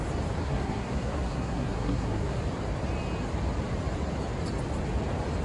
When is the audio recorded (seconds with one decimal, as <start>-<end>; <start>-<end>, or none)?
0.0-0.4; 2.4-5.4